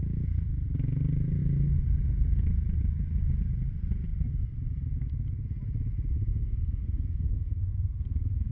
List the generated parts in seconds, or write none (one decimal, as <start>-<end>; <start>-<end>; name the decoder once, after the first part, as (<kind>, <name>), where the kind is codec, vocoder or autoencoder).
6.3-8.5 (codec, SNAC)